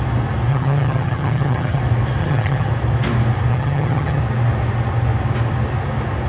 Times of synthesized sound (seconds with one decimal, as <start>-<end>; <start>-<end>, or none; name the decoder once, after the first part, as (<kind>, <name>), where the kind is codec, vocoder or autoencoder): 0.5-1.8 (vocoder, HiFi-GAN); 2.2-2.7; 3.5-4.2

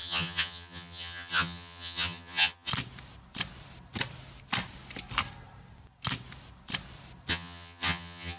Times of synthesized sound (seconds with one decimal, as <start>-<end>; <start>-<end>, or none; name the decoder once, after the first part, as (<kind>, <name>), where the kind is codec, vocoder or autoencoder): 0.0-2.7 (vocoder, HiFi-GAN); 7.3-8.4